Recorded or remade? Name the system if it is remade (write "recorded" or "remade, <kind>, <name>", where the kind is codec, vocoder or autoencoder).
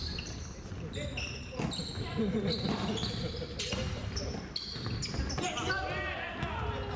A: recorded